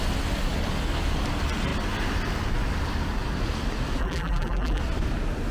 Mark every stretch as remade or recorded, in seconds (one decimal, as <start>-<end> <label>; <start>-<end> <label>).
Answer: 0.0-4.0 recorded; 4.0-4.8 remade; 4.8-5.5 recorded